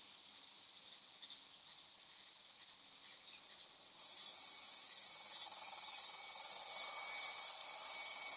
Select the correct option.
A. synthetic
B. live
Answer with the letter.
B